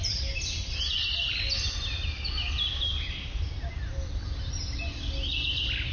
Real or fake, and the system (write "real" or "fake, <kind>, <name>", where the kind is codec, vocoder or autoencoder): real